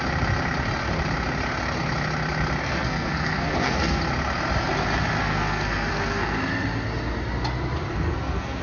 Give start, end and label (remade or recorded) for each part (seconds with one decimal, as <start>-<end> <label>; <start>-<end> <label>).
0.0-2.6 recorded; 2.6-4.0 remade; 4.0-5.2 recorded; 5.2-6.4 remade; 6.4-7.9 recorded; 7.9-8.6 remade